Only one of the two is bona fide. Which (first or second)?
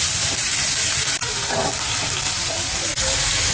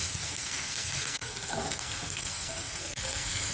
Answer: first